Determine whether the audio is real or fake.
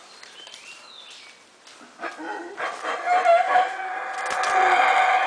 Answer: real